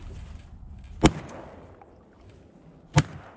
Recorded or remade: recorded